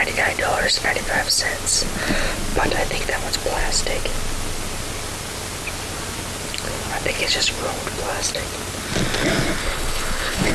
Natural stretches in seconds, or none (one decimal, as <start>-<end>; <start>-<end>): 0.0-9.6

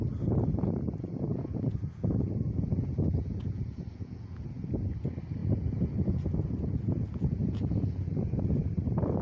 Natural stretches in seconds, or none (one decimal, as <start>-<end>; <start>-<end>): 0.0-1.3; 5.0-5.4; 8.4-9.2

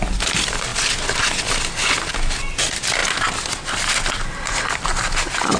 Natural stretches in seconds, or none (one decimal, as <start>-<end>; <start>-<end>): 0.0-5.6

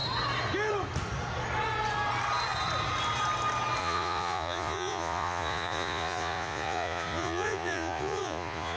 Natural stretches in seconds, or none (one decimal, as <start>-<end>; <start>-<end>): 0.0-3.8

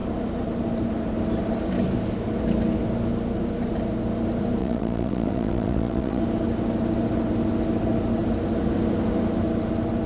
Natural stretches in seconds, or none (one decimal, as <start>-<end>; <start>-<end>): 0.0-4.6; 6.2-10.1

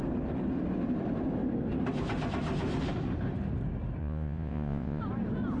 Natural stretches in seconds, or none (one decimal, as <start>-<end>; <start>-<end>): 0.0-4.0; 5.0-5.6

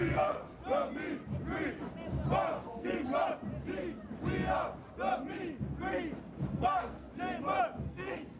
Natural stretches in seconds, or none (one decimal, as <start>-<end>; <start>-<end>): 0.4-2.6; 3.1-6.5; 7.1-7.8

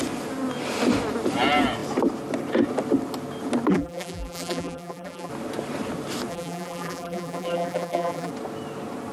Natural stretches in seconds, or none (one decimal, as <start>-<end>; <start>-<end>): 0.0-3.7; 5.3-6.3; 8.3-9.1